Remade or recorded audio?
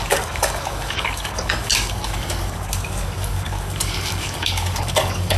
remade